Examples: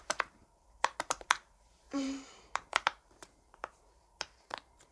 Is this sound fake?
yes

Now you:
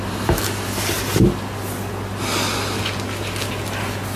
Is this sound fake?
no